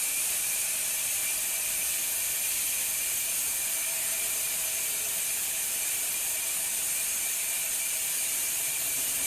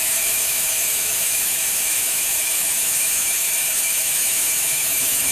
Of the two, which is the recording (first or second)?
first